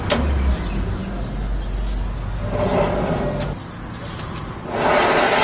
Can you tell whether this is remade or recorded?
recorded